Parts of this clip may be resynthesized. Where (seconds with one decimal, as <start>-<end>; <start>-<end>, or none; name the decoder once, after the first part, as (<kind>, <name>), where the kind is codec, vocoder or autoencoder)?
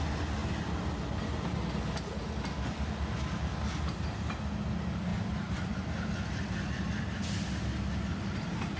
none